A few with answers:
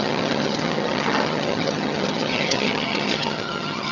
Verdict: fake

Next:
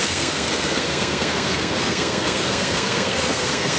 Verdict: fake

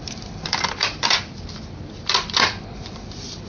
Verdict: fake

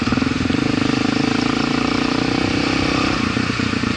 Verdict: fake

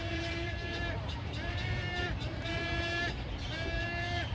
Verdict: fake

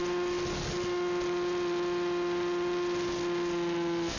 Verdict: real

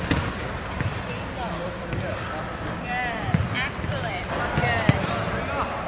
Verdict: real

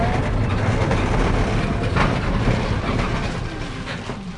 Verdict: real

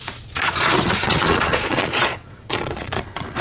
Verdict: fake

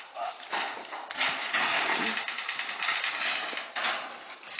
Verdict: fake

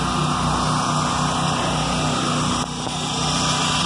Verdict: real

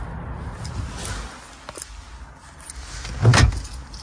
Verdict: real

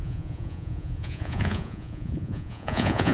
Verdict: fake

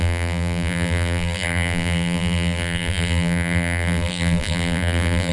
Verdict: fake